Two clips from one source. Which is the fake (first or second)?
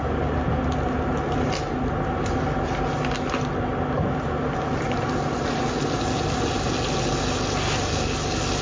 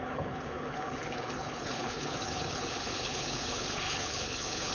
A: second